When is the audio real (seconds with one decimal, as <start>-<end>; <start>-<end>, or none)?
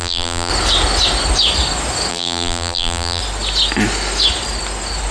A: 0.5-2.1; 3.2-5.1